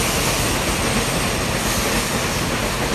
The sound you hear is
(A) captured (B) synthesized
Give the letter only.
A